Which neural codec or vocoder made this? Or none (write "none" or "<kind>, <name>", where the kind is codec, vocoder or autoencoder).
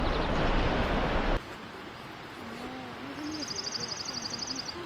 none